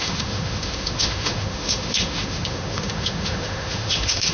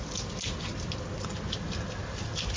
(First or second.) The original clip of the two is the second